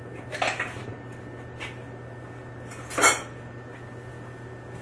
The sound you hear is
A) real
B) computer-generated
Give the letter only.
A